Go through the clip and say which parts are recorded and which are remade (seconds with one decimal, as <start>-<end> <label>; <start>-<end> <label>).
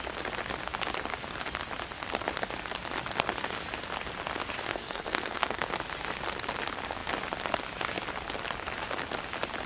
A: 0.0-4.7 recorded; 4.7-5.7 remade; 5.7-9.7 recorded